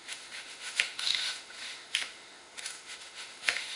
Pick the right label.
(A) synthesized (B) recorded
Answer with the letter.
A